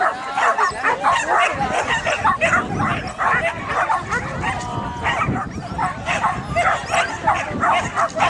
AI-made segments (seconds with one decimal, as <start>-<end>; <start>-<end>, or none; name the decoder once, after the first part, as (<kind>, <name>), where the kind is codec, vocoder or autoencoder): none

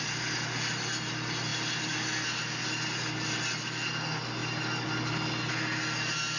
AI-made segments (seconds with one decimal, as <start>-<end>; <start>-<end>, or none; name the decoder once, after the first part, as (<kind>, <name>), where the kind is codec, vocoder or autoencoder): none

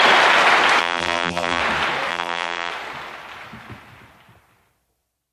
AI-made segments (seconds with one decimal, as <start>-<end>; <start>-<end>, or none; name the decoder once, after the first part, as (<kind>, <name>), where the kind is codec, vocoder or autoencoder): 0.8-1.6 (vocoder, BigVGAN v2); 2.1-2.7

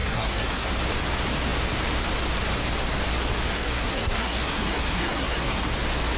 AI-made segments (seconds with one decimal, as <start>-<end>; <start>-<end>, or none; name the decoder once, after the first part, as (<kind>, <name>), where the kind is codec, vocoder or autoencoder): 0.0-0.7 (codec, SNAC); 3.5-5.7